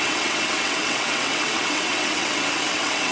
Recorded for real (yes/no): no